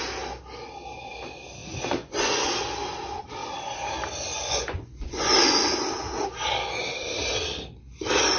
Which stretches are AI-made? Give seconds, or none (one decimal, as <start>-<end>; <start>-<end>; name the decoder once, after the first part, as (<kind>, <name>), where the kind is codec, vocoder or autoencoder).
1.6-2.5 (vocoder, Vocos); 4.3-5.3